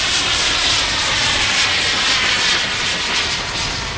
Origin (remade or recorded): recorded